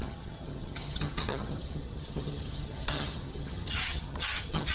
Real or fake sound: fake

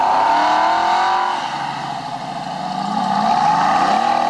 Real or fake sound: real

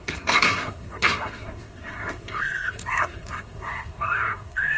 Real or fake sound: fake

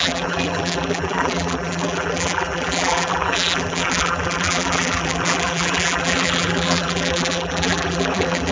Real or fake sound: fake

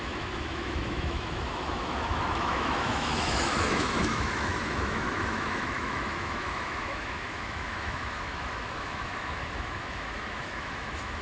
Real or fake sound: fake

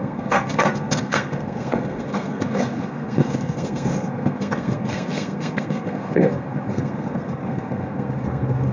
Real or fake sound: fake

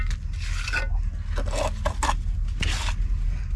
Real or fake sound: real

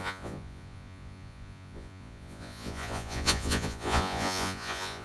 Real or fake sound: fake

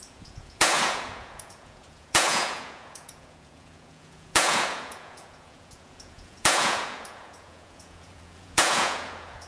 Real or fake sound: fake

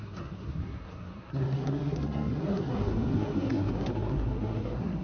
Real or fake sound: fake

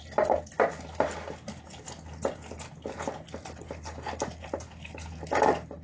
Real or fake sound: real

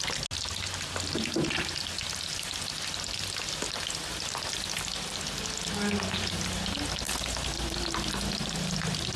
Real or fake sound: real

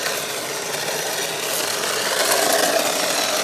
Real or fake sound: real